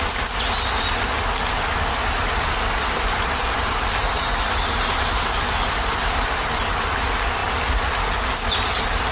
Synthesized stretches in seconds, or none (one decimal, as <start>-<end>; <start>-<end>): none